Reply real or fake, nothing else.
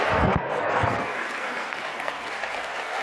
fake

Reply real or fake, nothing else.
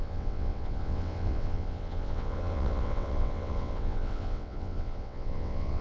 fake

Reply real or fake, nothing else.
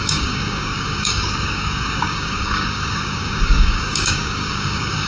fake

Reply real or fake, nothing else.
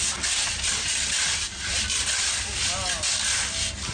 real